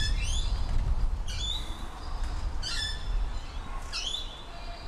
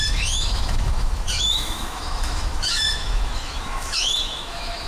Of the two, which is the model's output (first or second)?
second